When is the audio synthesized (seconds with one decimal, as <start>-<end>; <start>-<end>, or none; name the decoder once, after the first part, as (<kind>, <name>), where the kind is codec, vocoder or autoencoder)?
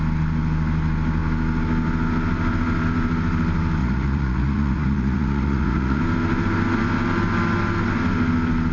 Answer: 3.8-6.0 (vocoder, Vocos)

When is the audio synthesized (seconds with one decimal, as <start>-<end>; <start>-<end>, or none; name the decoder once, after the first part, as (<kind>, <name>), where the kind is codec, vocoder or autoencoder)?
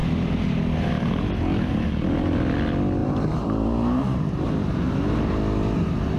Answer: 3.0-4.5 (vocoder, BigVGAN v2)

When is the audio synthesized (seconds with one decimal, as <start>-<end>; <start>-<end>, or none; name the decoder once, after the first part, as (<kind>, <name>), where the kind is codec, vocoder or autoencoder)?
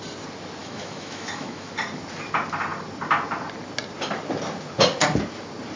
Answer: 0.6-1.7 (autoencoder, DAC-VAE)